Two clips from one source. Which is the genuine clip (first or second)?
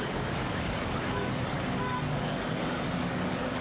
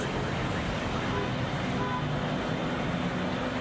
second